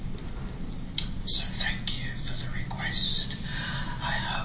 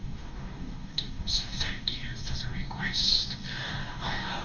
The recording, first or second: first